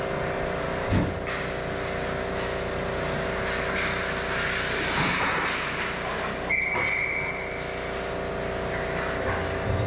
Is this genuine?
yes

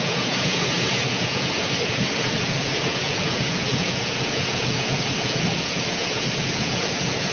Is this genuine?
no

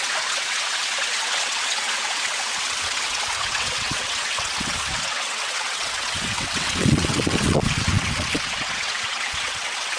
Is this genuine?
no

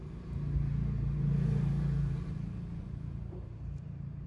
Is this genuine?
no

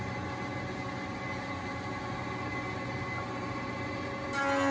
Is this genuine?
yes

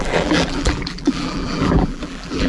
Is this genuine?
no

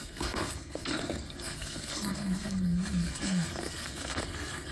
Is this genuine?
no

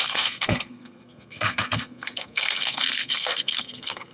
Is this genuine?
no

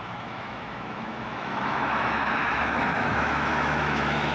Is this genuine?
no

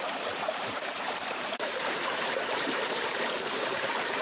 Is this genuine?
no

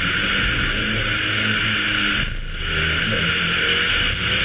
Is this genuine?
yes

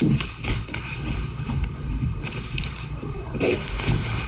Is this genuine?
no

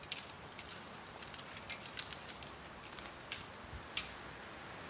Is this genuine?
yes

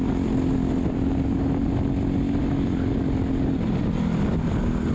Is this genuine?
yes